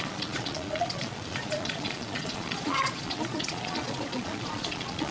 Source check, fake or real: fake